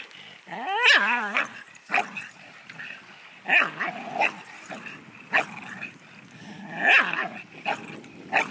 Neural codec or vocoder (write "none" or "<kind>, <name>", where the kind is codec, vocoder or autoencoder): none